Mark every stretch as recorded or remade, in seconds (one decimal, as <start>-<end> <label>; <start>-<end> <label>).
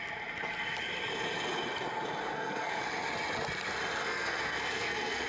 0.0-2.2 recorded; 2.2-2.8 remade; 2.8-4.0 recorded; 4.0-5.3 remade